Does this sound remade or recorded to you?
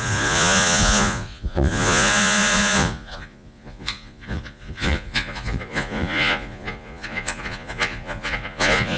remade